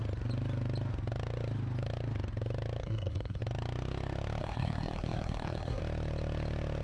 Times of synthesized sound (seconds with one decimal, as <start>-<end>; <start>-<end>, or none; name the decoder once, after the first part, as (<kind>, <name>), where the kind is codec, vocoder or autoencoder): 2.8-3.4 (codec, SNAC); 4.4-5.8